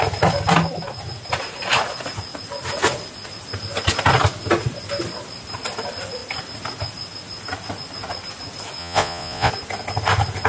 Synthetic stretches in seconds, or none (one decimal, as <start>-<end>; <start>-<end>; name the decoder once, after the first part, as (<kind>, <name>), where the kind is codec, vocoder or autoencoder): 8.8-9.5 (vocoder, Vocos)